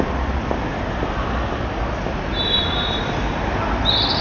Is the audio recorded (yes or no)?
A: yes